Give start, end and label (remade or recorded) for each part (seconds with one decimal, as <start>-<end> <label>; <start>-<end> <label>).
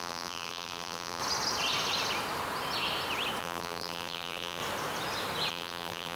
0.0-1.2 remade; 1.2-3.4 recorded; 3.4-4.6 remade; 4.6-5.5 recorded; 5.5-6.2 remade